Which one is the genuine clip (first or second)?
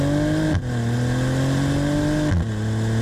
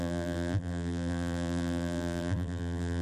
first